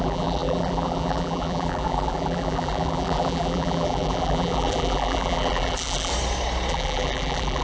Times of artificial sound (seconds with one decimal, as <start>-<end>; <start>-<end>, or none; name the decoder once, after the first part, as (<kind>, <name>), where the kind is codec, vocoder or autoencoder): 0.0-6.1 (vocoder, BigVGAN v2); 6.7-7.6